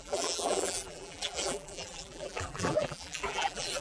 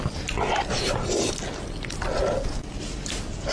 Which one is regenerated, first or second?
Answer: first